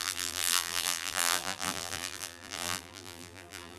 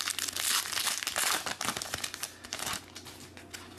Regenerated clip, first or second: first